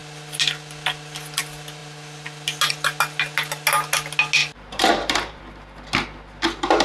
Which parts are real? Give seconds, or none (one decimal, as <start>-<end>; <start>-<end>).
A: 0.0-4.4; 5.4-6.8